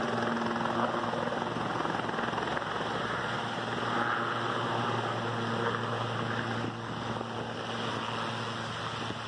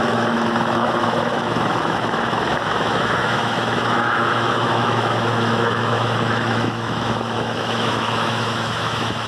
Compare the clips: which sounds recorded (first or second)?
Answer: first